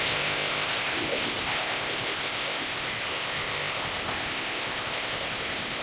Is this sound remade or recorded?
remade